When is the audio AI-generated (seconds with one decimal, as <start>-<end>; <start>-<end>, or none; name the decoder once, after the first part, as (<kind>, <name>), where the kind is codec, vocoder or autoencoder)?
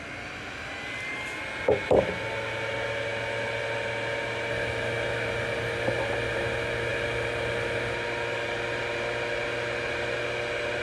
none